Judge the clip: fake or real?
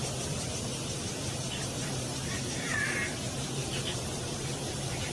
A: fake